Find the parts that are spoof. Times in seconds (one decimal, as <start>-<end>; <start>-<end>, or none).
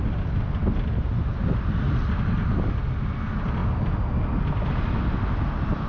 none